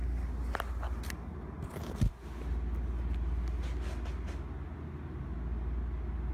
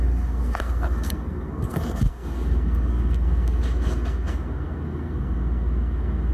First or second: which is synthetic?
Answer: second